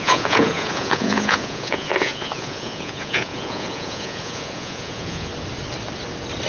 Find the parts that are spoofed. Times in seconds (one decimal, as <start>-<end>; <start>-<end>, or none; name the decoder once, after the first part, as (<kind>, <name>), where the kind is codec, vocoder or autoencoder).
0.0-5.3 (vocoder, Vocos)